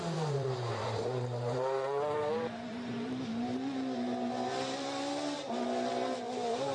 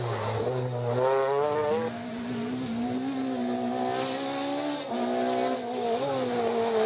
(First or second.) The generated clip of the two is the first